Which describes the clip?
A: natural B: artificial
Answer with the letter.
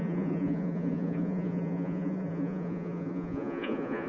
B